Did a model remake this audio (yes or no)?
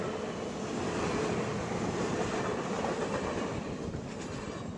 no